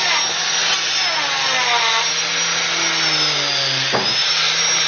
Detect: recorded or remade recorded